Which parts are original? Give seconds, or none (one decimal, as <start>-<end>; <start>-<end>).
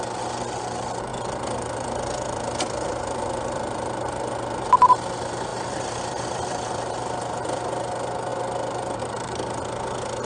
0.0-1.1; 4.9-5.5; 7.0-10.2